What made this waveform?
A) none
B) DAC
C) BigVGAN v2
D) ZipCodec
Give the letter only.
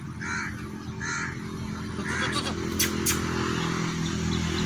A